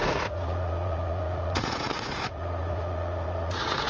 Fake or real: fake